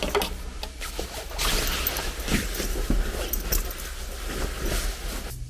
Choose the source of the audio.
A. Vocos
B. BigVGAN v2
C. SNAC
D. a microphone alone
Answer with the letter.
D